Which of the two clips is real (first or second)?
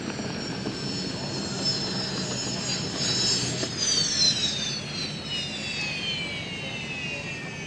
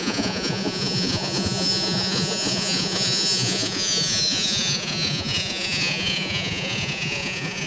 first